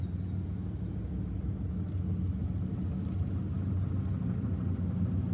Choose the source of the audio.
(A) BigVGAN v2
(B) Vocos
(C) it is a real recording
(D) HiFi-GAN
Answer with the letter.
C